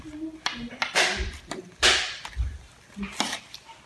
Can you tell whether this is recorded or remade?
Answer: recorded